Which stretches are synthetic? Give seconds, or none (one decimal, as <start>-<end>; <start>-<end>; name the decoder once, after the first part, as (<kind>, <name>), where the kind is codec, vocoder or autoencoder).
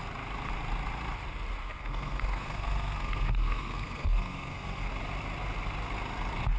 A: 1.6-4.9 (codec, SNAC)